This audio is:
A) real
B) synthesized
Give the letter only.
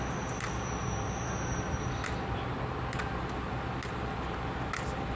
A